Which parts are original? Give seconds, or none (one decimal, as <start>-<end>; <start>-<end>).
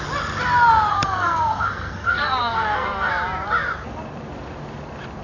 0.0-0.9; 3.1-5.2